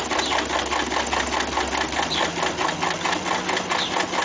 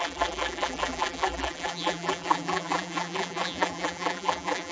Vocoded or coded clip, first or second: second